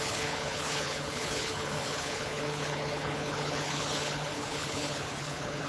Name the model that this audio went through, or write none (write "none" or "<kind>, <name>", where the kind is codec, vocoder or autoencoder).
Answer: codec, HILCodec